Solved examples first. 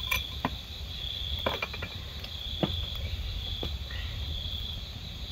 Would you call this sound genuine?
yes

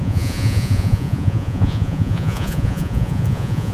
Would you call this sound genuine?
no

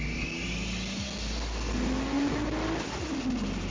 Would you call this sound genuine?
yes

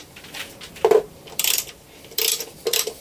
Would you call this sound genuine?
yes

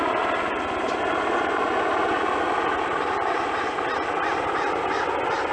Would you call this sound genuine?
yes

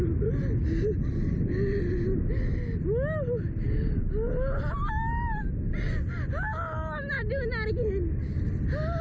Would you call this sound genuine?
yes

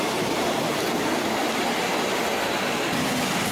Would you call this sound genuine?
no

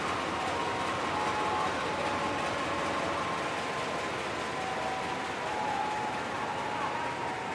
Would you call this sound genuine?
yes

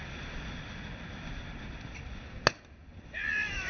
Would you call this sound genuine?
yes